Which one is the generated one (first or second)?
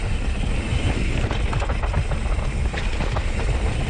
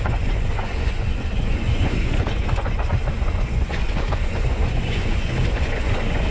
second